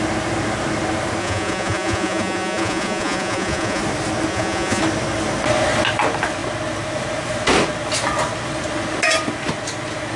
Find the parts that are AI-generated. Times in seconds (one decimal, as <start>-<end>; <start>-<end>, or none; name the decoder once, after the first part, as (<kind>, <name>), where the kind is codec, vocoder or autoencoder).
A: 1.2-3.8 (vocoder, Vocos); 4.3-4.8